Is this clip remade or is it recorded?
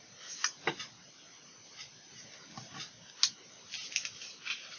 recorded